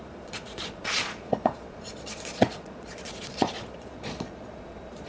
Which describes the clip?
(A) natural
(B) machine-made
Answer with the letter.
B